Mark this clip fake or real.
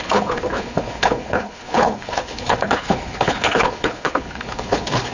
fake